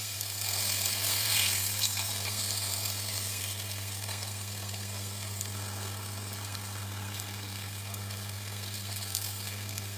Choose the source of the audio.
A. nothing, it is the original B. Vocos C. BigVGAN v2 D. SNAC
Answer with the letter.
D